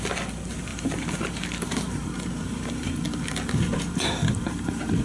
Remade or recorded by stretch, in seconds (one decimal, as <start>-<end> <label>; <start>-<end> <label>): 0.0-0.7 recorded; 0.7-2.9 remade; 2.9-5.0 recorded